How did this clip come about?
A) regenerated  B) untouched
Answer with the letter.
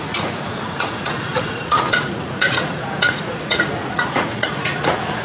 A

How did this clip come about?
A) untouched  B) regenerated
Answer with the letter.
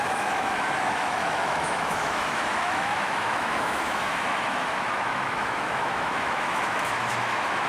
B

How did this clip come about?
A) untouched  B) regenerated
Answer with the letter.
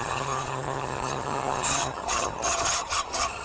B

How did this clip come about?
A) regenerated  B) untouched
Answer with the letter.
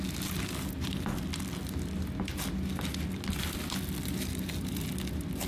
B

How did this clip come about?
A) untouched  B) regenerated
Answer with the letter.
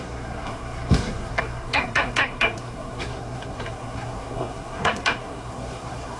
B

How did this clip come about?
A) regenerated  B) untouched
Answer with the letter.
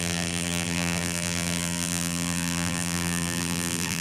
A